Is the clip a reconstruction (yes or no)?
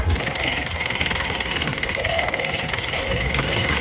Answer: yes